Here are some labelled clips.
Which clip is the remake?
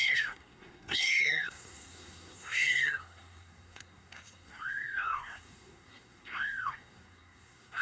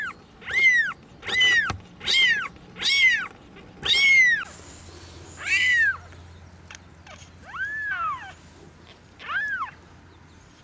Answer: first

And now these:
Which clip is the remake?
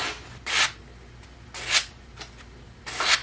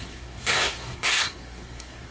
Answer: second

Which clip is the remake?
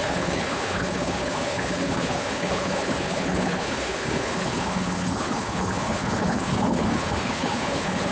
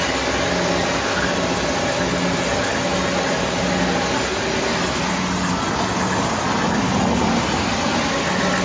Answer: first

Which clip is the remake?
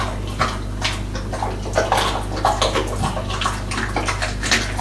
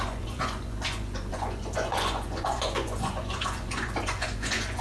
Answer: second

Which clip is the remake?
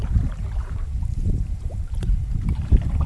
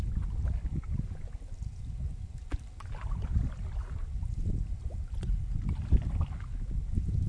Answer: first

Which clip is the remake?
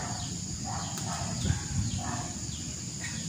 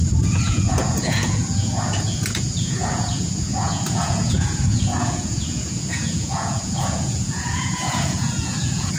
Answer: second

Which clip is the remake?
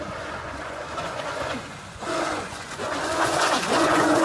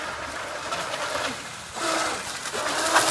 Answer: first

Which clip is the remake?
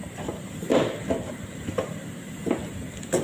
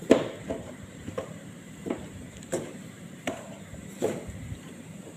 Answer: second